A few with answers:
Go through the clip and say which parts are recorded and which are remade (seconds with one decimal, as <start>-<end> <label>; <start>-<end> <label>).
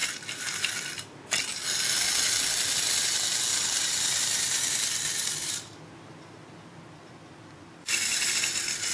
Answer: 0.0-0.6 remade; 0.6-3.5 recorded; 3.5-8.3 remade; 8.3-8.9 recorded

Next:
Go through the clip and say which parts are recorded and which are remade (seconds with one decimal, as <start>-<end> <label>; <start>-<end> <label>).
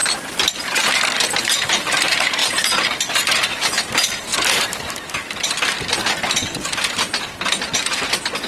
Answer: 0.0-1.4 recorded; 1.4-4.3 remade; 4.3-7.6 recorded; 7.6-8.5 remade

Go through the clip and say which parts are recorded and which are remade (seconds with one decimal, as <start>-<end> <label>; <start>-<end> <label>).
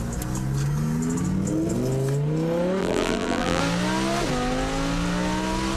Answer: 0.0-2.8 recorded; 2.8-3.6 remade; 3.6-5.8 recorded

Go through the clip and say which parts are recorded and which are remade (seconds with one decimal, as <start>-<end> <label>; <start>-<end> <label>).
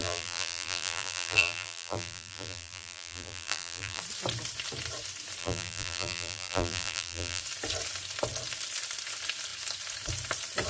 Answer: 0.0-4.0 remade; 4.0-5.4 recorded; 5.4-7.4 remade; 7.4-10.7 recorded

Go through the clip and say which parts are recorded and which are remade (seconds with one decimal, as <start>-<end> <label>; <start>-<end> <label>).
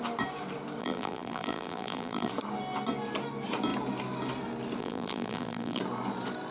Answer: 0.0-0.8 recorded; 0.8-2.3 remade; 2.3-4.8 recorded; 4.8-5.8 remade; 5.8-6.5 recorded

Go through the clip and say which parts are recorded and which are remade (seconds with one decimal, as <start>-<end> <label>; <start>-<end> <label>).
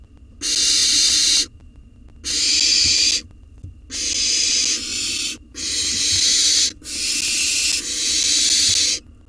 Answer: 0.0-0.8 recorded; 0.8-1.8 remade; 1.8-4.9 recorded; 4.9-6.6 remade; 6.6-9.3 recorded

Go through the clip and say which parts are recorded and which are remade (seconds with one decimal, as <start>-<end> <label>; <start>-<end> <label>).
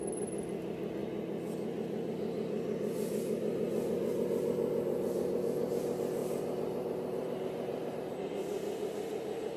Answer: 0.0-6.2 recorded; 6.2-7.9 remade; 7.9-9.6 recorded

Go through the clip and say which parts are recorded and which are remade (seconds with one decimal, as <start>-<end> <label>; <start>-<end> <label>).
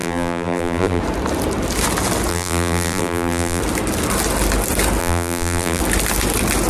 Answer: 0.0-1.0 remade; 1.0-2.3 recorded; 2.3-3.6 remade; 3.6-5.0 recorded; 5.0-5.8 remade; 5.8-6.7 recorded